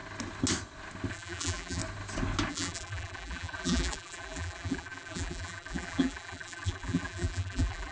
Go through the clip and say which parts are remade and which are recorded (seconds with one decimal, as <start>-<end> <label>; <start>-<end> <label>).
0.0-1.1 recorded; 1.1-1.8 remade; 1.8-2.5 recorded; 2.5-7.9 remade